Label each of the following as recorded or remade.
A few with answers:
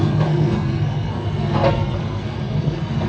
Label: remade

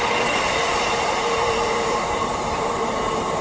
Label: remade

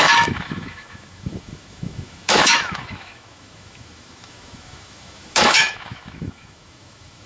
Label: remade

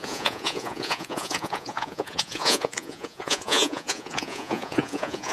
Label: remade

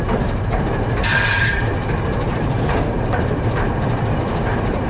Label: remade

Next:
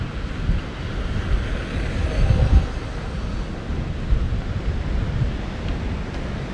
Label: recorded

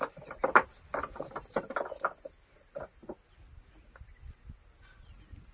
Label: recorded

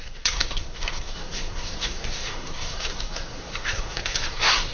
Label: remade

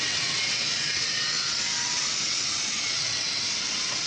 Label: remade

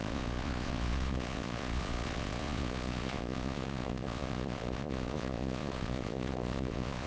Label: remade